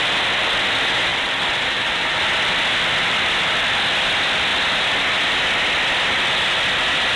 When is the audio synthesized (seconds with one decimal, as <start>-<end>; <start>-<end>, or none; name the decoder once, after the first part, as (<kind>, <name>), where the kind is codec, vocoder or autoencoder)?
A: 1.1-2.2 (vocoder, BigVGAN v2)